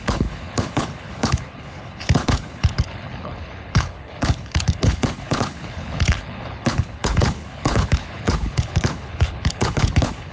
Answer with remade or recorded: remade